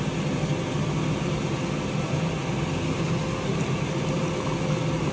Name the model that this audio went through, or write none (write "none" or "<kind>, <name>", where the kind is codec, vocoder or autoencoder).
none